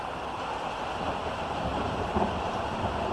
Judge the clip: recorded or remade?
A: recorded